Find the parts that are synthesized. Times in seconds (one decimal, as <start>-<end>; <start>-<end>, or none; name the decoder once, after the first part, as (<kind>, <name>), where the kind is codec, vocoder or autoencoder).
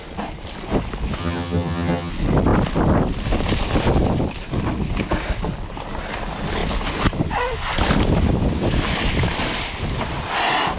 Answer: 1.2-2.1 (vocoder, HiFi-GAN)